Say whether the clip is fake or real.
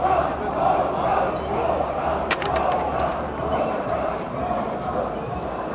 fake